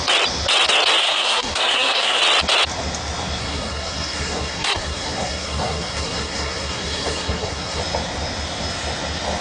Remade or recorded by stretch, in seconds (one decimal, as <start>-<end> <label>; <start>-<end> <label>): 0.0-1.0 recorded; 1.0-2.2 remade; 2.2-3.4 recorded; 3.4-7.8 remade; 7.8-9.4 recorded